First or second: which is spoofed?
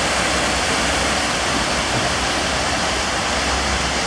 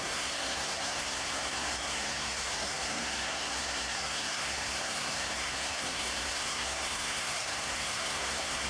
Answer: second